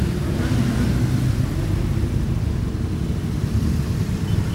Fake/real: real